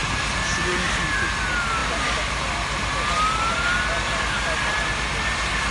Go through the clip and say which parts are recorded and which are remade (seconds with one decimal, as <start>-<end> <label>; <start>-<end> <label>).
0.0-5.7 recorded